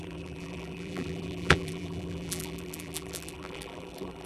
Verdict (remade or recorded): remade